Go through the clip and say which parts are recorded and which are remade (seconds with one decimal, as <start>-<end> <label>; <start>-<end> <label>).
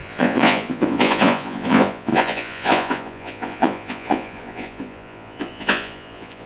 0.0-6.5 remade